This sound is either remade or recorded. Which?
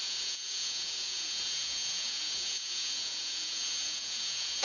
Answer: remade